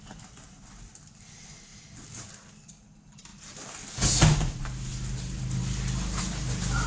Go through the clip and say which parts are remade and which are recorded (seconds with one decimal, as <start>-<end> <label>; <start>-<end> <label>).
0.0-6.9 recorded